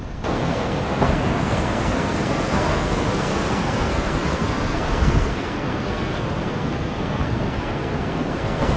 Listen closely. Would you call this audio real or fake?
fake